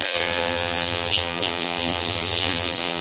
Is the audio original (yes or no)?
no